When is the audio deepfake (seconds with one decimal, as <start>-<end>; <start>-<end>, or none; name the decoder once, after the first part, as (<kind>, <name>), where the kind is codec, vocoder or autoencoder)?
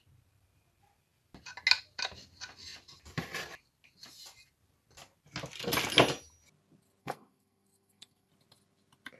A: 7.0-8.3 (codec, SNAC)